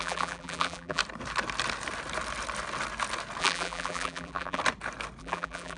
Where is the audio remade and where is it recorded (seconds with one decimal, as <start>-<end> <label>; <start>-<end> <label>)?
0.0-1.0 remade; 1.0-3.4 recorded; 3.4-4.6 remade; 4.6-5.2 recorded; 5.2-5.8 remade

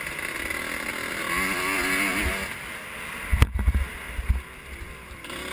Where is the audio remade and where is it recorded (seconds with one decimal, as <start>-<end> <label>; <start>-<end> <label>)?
0.0-5.5 recorded

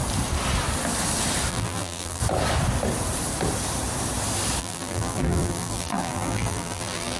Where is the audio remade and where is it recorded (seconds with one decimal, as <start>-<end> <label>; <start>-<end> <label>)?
0.0-1.5 recorded; 1.5-2.2 remade; 2.2-4.6 recorded; 4.6-7.2 remade

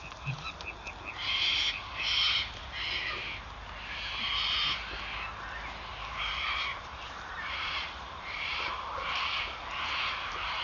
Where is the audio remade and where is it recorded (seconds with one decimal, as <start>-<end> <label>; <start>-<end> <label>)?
0.0-5.9 recorded; 5.9-9.2 remade; 9.2-10.6 recorded

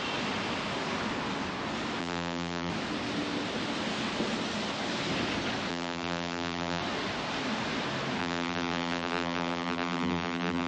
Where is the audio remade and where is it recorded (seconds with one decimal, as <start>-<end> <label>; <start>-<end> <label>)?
0.0-2.0 recorded; 2.0-2.7 remade; 2.7-5.7 recorded; 5.7-6.8 remade; 6.8-8.2 recorded; 8.2-10.7 remade

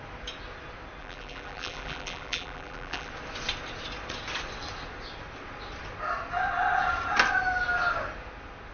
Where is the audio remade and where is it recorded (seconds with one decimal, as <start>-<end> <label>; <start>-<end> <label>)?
0.0-1.0 recorded; 1.0-3.1 remade; 3.1-8.7 recorded

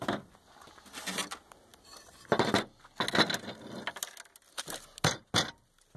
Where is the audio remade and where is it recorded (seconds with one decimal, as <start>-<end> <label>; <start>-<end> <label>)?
0.0-6.0 recorded

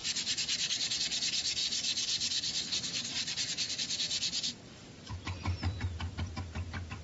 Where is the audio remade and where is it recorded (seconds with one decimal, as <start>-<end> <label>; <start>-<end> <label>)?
0.0-0.9 remade; 0.9-1.6 recorded; 1.6-2.6 remade; 2.6-3.1 recorded; 3.1-6.3 remade; 6.3-7.0 recorded